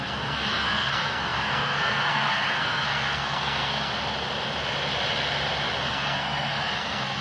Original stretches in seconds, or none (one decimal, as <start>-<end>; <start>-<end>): 3.9-5.9